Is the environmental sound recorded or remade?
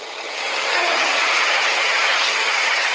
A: remade